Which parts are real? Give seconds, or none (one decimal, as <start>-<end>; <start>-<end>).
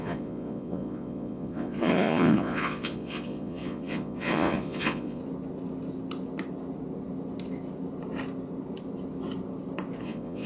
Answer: 5.2-10.0